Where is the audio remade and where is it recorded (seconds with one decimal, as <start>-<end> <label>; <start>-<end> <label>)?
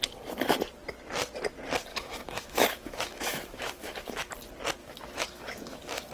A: 0.0-1.9 recorded; 1.9-4.3 remade; 4.3-4.8 recorded; 4.8-6.1 remade